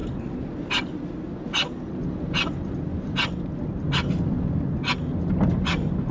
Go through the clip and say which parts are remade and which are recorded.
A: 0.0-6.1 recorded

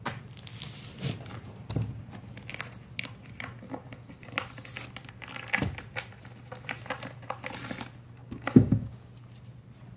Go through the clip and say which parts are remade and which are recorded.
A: 0.0-8.2 recorded; 8.2-9.1 remade; 9.1-10.0 recorded

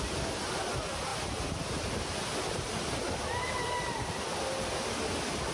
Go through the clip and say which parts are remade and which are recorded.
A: 0.0-5.5 recorded

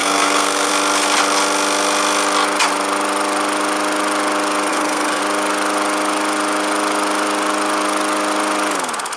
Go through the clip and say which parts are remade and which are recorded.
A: 0.0-0.7 remade; 0.7-4.7 recorded; 4.7-5.2 remade; 5.2-9.2 recorded

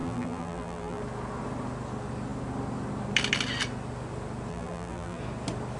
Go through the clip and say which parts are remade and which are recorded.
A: 0.0-1.0 remade; 1.0-4.5 recorded; 4.5-5.2 remade; 5.2-5.8 recorded

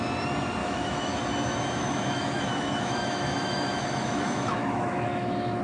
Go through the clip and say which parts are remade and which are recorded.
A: 0.0-0.6 recorded; 0.6-1.2 remade; 1.2-1.8 recorded; 1.8-5.6 remade

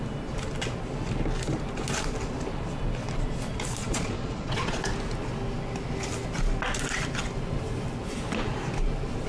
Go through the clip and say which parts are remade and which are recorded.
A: 0.0-3.8 recorded; 3.8-4.8 remade; 4.8-9.3 recorded

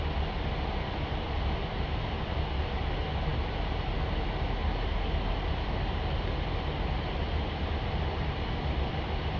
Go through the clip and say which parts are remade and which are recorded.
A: 0.0-9.4 recorded